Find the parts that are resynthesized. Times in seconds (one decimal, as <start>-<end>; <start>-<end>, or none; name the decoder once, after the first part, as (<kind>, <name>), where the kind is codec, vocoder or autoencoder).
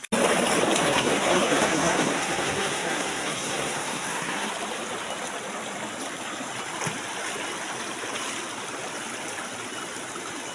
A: 0.8-4.5 (codec, SNAC)